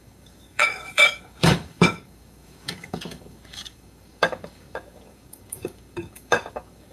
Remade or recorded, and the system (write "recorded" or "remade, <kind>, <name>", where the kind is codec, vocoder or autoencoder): remade, codec, DAC